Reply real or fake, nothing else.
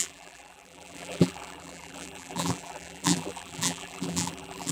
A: fake